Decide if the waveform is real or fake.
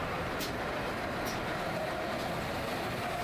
real